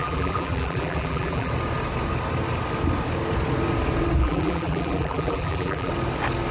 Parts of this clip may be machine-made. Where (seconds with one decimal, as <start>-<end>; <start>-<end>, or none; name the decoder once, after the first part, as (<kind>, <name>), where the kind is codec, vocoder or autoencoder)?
0.0-1.5 (vocoder, BigVGAN v2); 4.2-5.9